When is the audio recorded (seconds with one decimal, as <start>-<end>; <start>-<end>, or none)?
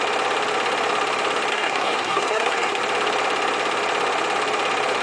0.0-1.5; 2.8-5.0